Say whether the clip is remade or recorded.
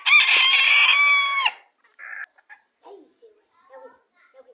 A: recorded